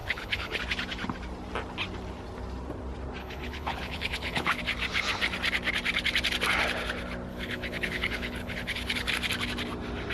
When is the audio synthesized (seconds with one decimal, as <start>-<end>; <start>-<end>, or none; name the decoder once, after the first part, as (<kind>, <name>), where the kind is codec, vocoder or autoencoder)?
0.0-0.6 (codec, HILCodec); 3.2-4.6; 7.3-9.1